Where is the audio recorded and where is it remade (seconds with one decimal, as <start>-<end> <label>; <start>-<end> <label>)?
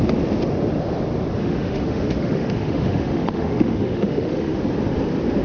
0.0-1.4 recorded; 1.4-4.6 remade; 4.6-5.4 recorded